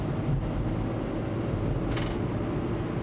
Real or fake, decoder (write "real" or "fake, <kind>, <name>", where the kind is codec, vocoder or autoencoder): real